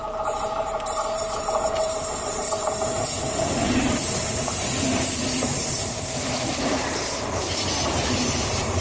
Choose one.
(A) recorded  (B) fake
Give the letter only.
B